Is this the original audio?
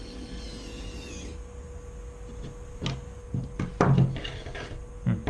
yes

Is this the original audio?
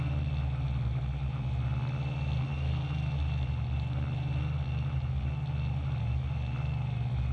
yes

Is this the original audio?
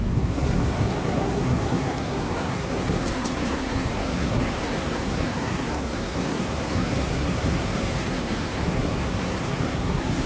no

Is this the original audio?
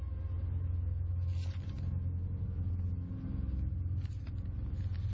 yes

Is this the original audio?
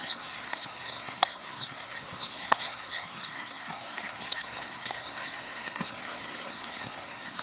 no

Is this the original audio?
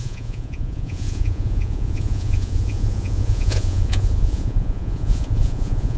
no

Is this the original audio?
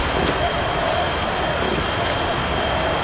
yes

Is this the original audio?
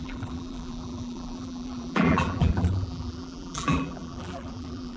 no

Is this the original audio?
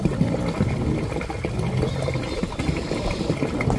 yes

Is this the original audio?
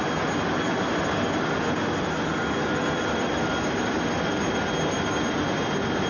yes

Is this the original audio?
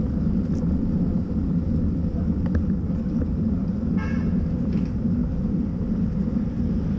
yes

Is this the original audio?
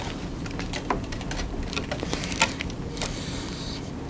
yes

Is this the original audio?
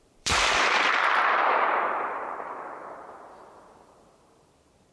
no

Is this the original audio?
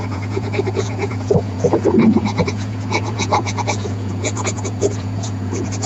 no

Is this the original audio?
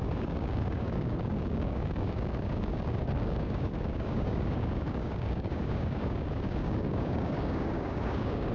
no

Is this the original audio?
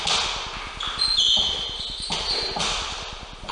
yes